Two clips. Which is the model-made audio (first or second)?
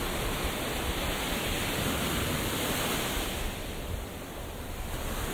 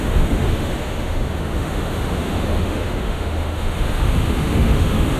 second